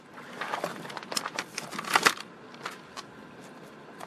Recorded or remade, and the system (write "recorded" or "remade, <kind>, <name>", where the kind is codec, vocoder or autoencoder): recorded